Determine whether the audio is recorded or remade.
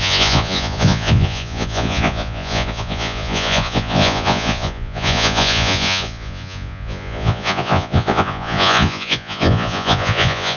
remade